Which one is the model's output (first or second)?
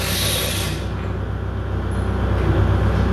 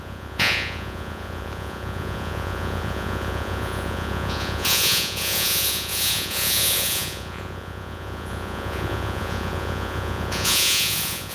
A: second